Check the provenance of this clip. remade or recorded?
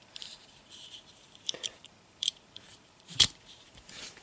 remade